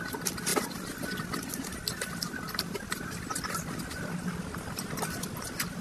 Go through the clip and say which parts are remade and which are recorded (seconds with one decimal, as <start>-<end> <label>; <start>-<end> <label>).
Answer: 0.0-5.8 recorded